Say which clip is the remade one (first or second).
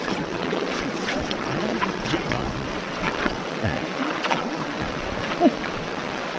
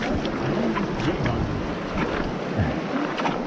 first